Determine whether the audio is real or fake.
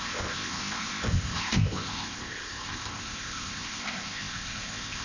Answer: fake